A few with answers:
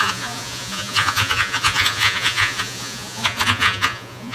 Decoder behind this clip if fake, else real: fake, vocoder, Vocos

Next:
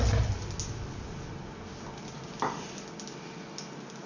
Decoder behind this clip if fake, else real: real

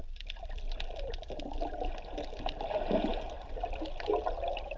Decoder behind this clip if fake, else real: real